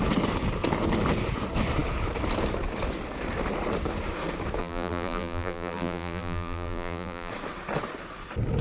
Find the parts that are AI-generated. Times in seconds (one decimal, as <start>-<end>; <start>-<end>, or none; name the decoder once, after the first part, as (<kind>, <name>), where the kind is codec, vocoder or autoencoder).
4.6-7.3 (vocoder, BigVGAN v2)

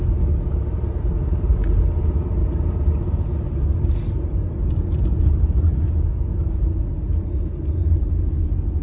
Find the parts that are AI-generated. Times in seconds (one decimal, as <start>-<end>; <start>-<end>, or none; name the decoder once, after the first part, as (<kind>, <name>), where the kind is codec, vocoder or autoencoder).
none

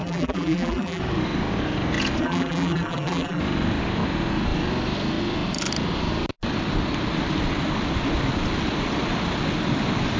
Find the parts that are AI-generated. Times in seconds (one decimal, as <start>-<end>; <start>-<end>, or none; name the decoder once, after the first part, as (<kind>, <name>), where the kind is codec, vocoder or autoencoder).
0.0-1.0 (vocoder, BigVGAN v2); 2.2-3.4

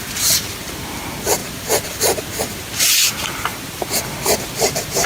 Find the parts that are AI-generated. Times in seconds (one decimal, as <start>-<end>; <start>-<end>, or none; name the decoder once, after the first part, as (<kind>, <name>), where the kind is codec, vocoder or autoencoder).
none

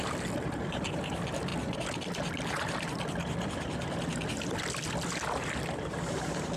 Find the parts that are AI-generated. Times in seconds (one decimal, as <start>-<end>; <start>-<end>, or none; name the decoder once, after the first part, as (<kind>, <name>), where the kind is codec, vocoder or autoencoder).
none

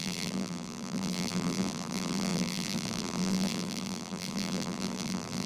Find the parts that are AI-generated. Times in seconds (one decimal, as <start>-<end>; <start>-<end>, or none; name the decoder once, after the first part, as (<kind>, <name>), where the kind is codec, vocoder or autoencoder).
0.0-5.5 (vocoder, BigVGAN v2)